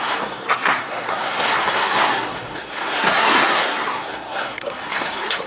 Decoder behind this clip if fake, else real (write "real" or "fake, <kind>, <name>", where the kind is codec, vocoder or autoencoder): fake, codec, SNAC